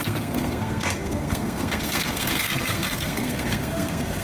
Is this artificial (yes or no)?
yes